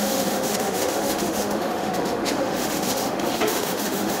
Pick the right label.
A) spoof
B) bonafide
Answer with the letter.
A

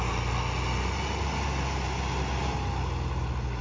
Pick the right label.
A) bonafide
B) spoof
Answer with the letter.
A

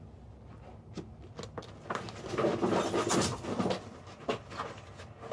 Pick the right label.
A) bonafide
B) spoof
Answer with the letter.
A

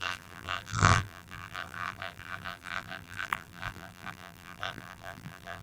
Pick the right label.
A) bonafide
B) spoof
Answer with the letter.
B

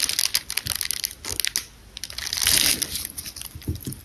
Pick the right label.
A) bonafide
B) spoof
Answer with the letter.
A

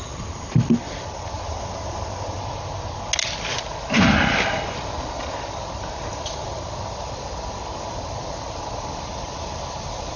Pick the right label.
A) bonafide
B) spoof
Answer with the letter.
A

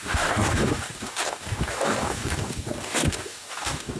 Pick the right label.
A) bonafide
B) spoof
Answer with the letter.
B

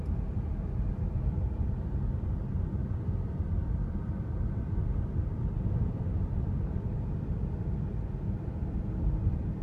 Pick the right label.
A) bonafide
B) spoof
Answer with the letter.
A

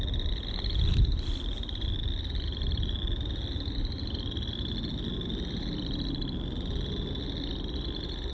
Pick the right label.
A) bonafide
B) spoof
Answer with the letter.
A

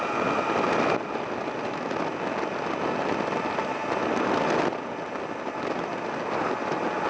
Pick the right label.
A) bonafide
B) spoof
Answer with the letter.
A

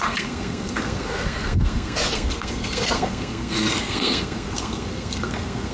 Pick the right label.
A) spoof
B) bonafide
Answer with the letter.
A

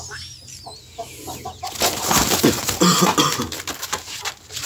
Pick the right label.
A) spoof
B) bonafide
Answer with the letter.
B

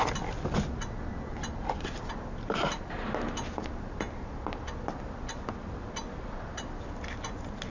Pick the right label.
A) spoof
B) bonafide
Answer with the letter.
B